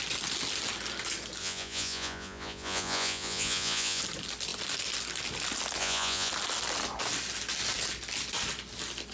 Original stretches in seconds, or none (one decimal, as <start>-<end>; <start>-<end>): 0.0-1.4; 4.0-5.8; 6.3-9.1